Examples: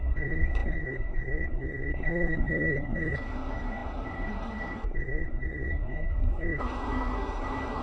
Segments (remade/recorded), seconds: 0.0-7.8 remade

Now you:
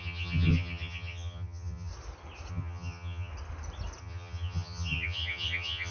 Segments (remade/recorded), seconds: 0.0-1.9 remade; 1.9-2.5 recorded; 2.5-3.3 remade; 3.3-4.0 recorded; 4.0-5.9 remade

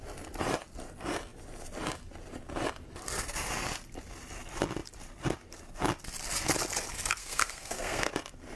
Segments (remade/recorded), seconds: 0.0-7.2 recorded; 7.2-8.1 remade; 8.1-8.6 recorded

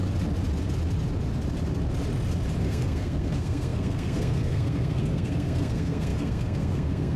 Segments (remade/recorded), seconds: 0.0-2.6 recorded; 2.6-7.2 remade

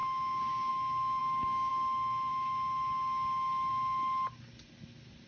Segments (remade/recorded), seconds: 0.0-0.7 remade; 0.7-1.2 recorded; 1.2-1.7 remade; 1.7-5.3 recorded

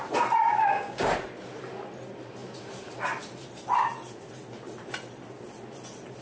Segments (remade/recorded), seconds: 0.0-0.5 recorded; 0.5-1.1 remade; 1.1-6.2 recorded

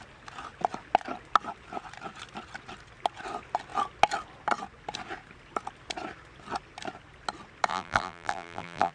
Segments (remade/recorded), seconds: 0.0-7.7 recorded; 7.7-8.9 remade

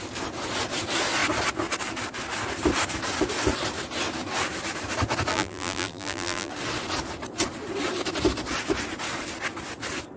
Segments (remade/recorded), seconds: 0.0-5.3 recorded; 5.3-6.5 remade; 6.5-10.2 recorded